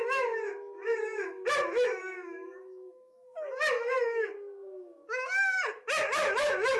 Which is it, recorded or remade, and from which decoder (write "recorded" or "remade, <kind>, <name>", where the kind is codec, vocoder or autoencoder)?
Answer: remade, autoencoder, DAC-VAE